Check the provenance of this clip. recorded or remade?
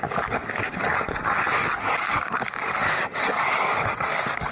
remade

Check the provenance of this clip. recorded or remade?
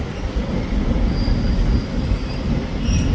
recorded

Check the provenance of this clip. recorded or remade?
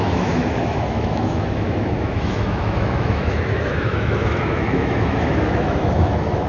remade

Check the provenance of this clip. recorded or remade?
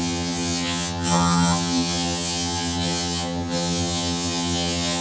remade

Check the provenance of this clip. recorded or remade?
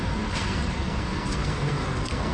remade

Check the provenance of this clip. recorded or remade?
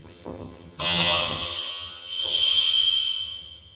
remade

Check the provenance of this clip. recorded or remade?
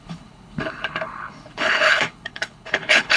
remade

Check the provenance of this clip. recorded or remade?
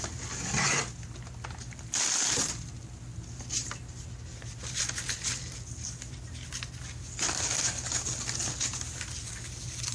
recorded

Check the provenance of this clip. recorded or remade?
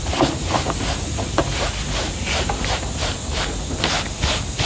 recorded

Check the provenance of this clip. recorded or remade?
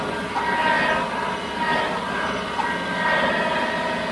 recorded